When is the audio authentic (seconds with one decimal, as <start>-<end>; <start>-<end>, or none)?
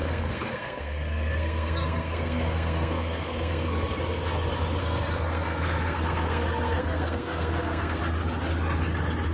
4.0-4.8; 8.0-9.3